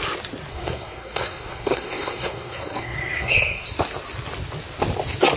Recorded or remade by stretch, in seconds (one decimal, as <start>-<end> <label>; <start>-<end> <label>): 0.0-0.5 recorded; 0.5-3.7 remade; 3.7-5.4 recorded